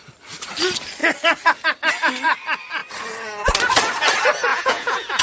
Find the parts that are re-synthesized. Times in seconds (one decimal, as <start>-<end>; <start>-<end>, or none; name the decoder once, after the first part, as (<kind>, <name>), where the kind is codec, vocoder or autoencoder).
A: 4.5-5.2 (vocoder, Vocos)